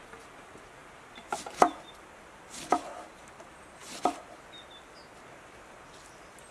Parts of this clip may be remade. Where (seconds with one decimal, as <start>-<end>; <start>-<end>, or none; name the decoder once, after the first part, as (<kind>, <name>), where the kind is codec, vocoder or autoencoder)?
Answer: none